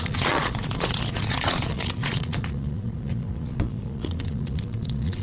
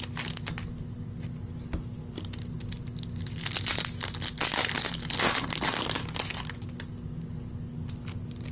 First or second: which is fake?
first